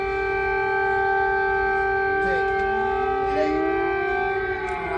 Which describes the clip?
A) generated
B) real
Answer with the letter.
B